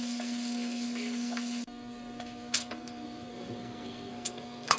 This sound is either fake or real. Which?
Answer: fake